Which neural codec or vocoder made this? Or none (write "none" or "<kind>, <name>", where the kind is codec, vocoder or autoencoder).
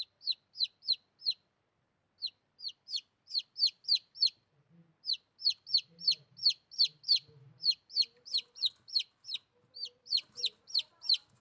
none